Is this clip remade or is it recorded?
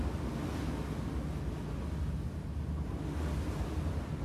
recorded